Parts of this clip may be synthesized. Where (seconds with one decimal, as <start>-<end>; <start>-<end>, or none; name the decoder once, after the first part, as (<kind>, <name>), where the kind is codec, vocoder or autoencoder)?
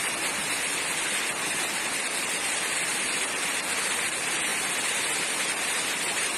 0.4-3.5 (vocoder, BigVGAN v2)